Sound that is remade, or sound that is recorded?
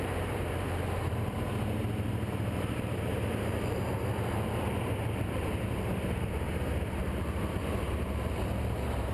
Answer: remade